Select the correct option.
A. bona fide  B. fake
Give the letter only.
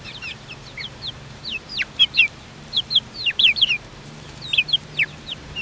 B